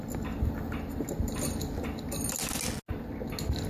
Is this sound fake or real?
real